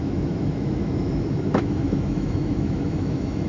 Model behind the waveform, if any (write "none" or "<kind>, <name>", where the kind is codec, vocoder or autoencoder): autoencoder, DAC-VAE